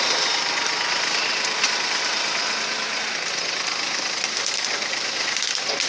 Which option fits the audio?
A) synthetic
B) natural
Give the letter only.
B